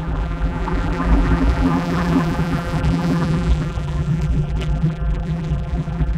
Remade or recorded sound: remade